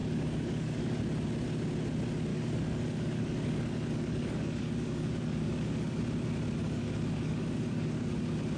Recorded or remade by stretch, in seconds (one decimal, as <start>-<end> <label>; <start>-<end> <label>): 0.0-1.0 remade; 1.0-2.3 recorded; 2.3-6.0 remade; 6.0-6.6 recorded; 6.6-8.2 remade; 8.2-8.6 recorded

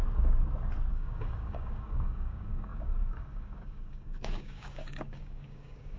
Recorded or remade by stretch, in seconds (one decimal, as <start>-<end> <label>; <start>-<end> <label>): 0.0-0.9 recorded; 0.9-6.0 remade